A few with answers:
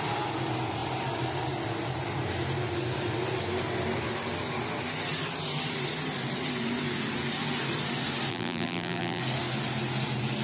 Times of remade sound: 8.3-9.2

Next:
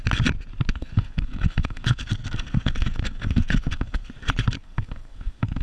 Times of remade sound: 0.7-4.1; 4.6-5.6

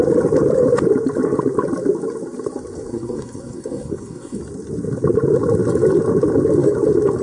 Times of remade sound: 2.9-4.4

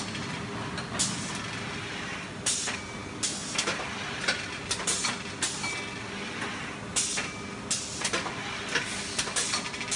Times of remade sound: none

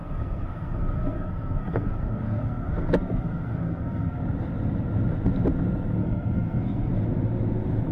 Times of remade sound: 0.0-4.2; 6.0-6.9

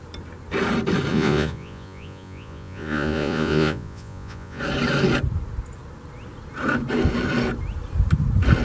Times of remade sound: 1.1-4.6

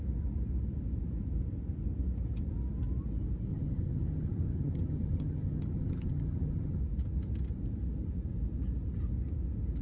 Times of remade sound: 3.5-6.8